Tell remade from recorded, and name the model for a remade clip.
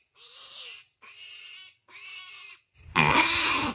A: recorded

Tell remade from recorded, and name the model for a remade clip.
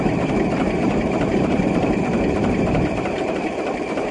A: remade, vocoder, BigVGAN v2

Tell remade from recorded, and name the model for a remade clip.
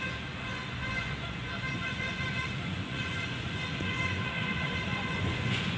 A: remade, vocoder, Vocos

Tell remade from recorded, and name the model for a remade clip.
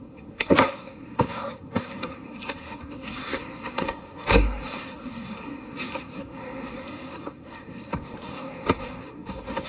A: remade, codec, SNAC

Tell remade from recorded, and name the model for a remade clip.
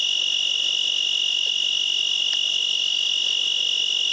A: recorded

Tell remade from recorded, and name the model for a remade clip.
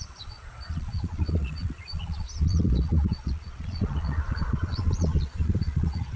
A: remade, vocoder, Vocos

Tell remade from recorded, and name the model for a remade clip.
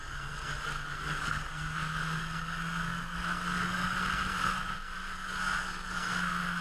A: remade, codec, SNAC